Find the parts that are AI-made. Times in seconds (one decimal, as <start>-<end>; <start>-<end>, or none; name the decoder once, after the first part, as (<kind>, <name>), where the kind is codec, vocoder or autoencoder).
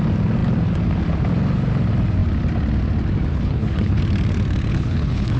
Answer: 3.3-4.0 (codec, HILCodec); 4.7-5.4